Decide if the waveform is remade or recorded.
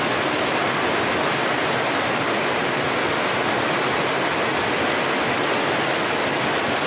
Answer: recorded